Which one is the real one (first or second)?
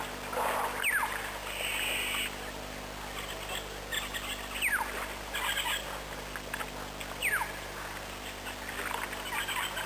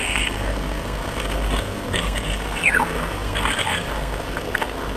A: first